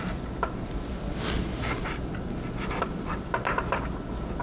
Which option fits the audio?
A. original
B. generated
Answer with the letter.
A